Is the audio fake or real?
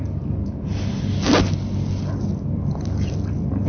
real